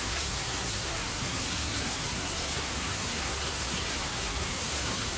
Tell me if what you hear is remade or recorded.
remade